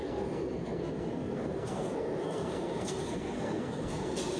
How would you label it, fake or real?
fake